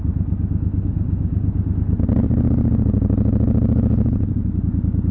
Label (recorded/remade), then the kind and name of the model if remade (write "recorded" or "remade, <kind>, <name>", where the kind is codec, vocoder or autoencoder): recorded